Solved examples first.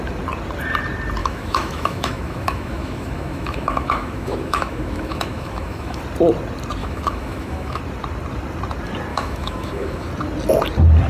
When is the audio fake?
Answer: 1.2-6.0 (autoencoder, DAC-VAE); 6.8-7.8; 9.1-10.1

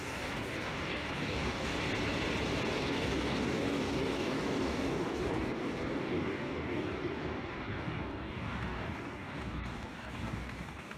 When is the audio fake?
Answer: 0.0-1.7 (codec, DAC); 2.8-11.0

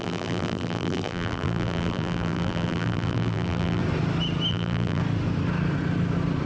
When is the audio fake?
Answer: 0.0-3.8 (vocoder, BigVGAN v2); 4.5-5.0